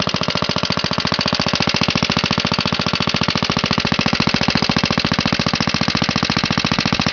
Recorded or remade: recorded